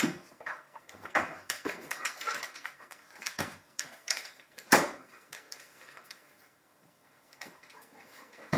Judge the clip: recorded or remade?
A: remade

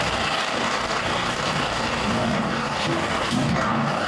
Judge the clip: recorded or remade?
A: remade